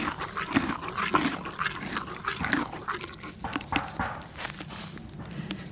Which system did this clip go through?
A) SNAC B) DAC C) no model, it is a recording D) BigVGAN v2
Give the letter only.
C